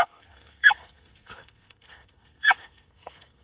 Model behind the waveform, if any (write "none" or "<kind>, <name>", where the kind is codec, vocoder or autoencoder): codec, SNAC